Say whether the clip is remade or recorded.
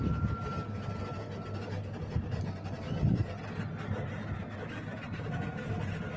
recorded